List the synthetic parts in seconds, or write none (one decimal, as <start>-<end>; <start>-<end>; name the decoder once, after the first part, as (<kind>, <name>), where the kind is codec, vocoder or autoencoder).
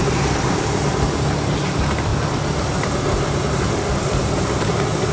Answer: 0.0-2.1 (vocoder, BigVGAN v2); 4.0-5.1